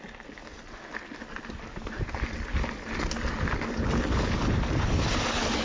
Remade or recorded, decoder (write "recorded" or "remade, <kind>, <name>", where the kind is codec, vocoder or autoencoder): recorded